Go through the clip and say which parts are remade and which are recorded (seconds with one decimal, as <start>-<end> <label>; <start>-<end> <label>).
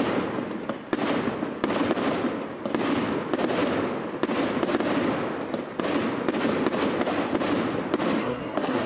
0.0-8.2 recorded; 8.2-8.9 remade